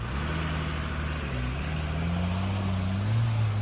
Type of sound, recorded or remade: recorded